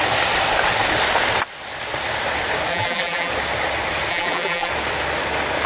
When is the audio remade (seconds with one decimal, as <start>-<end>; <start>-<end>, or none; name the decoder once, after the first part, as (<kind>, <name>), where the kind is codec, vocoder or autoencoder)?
2.7-3.3 (vocoder, BigVGAN v2); 4.1-4.7